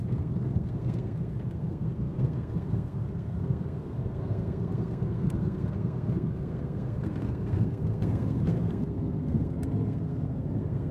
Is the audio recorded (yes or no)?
no